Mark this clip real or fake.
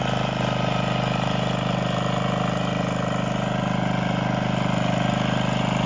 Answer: real